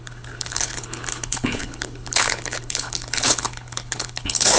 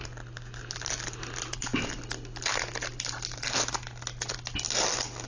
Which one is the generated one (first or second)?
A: first